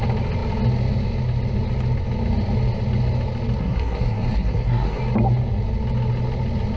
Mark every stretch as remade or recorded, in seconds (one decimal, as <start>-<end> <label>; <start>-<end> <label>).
0.0-3.6 recorded; 3.6-5.0 remade; 5.0-6.8 recorded